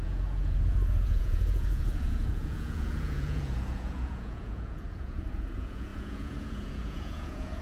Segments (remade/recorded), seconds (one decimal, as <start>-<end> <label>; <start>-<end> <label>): 0.0-7.6 remade